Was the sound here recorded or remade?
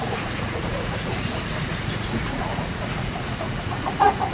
remade